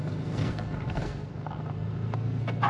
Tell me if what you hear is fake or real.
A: fake